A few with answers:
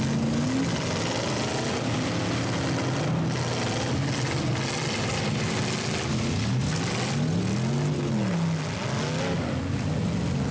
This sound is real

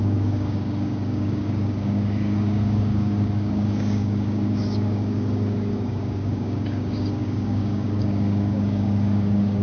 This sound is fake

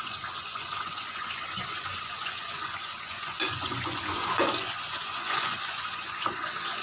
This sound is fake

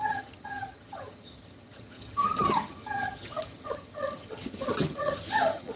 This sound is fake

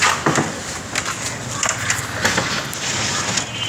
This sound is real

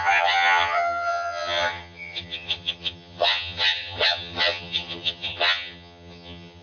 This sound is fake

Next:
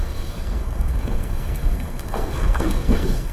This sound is fake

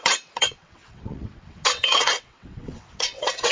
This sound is fake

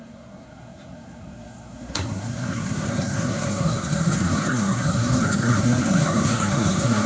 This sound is fake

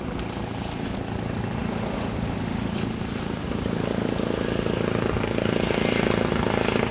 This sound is real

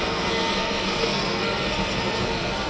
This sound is fake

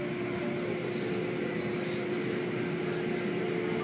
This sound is real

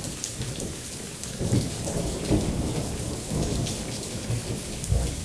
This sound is fake